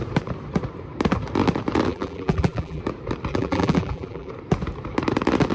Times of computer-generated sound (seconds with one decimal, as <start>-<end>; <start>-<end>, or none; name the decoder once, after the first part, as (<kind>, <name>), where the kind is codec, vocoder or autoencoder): 1.9-2.8 (vocoder, BigVGAN v2); 3.3-4.3